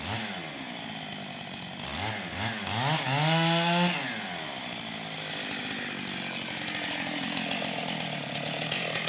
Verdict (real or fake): real